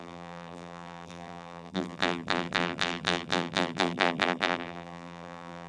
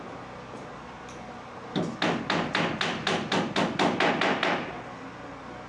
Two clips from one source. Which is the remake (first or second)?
first